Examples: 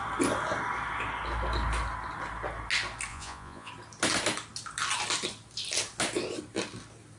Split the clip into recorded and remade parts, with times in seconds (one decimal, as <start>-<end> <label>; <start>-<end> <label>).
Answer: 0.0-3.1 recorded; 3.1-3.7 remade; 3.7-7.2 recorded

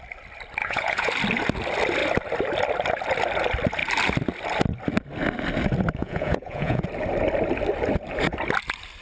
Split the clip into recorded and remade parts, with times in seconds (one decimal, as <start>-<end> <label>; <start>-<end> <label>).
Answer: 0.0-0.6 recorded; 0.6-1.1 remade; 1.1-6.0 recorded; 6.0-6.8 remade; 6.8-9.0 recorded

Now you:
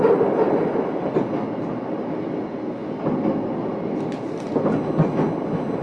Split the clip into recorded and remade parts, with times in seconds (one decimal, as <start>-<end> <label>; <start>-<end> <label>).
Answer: 0.0-5.8 recorded

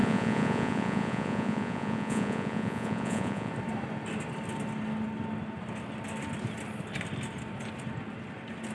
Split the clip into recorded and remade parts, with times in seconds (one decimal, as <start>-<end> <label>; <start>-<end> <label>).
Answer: 0.0-3.5 remade; 3.5-8.7 recorded

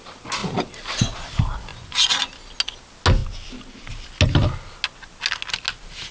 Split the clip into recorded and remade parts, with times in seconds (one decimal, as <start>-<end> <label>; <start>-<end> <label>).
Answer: 0.0-1.7 recorded; 1.7-2.3 remade; 2.3-6.1 recorded

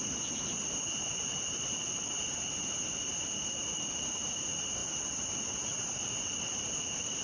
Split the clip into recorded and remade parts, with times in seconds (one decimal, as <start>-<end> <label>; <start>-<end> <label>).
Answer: 0.0-7.2 recorded

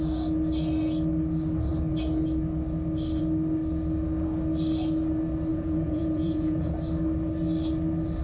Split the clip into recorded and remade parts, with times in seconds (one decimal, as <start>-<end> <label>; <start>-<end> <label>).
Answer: 0.0-5.5 recorded; 5.5-6.7 remade; 6.7-8.2 recorded

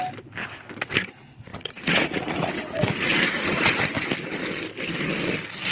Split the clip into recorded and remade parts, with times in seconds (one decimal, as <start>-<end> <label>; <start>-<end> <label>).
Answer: 0.0-1.5 recorded; 1.5-3.7 remade; 3.7-5.7 recorded